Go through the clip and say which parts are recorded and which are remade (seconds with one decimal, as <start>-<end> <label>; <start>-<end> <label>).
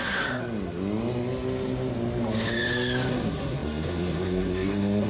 0.0-0.4 remade; 0.4-3.1 recorded; 3.1-5.1 remade